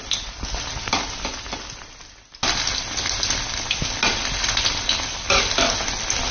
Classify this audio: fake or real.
real